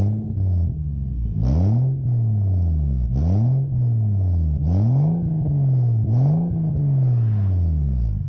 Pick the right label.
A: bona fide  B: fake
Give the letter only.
A